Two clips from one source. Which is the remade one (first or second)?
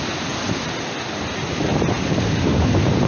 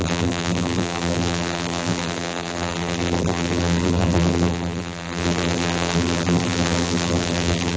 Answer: second